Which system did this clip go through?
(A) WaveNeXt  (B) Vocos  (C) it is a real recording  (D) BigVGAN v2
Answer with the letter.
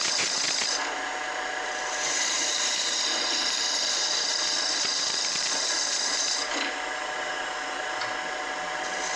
C